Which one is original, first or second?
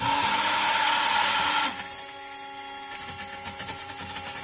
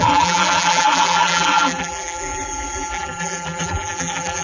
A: first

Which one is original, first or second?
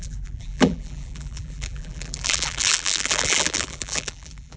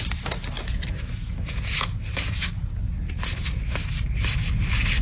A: second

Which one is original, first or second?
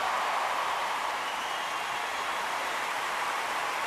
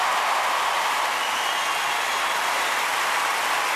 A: second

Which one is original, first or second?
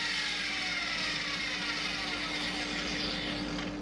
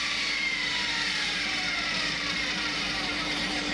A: first